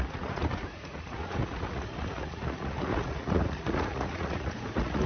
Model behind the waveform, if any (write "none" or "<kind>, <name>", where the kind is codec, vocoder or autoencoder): vocoder, Vocos